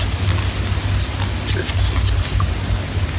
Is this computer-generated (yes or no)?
no